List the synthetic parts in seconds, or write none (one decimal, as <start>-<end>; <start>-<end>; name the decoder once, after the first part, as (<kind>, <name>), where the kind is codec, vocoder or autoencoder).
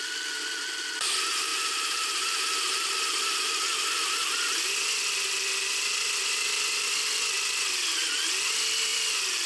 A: 1.5-4.9 (vocoder, BigVGAN v2); 8.9-9.5